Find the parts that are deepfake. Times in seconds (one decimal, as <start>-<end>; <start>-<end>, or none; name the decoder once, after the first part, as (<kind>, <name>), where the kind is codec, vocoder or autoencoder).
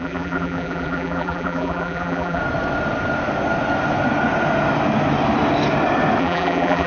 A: 0.0-2.4 (vocoder, BigVGAN v2); 6.2-6.9